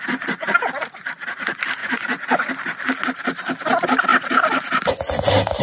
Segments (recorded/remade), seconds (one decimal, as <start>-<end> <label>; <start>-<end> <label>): 0.0-1.8 recorded; 1.8-2.5 remade; 2.5-5.6 recorded